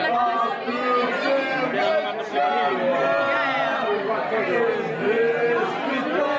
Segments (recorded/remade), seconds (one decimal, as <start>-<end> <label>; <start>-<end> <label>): 0.0-6.4 recorded